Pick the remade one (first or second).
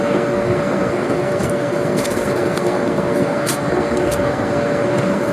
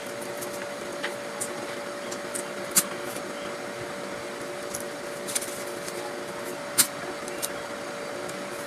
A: first